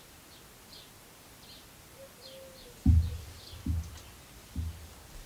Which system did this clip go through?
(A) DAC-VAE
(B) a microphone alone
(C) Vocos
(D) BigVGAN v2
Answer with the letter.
B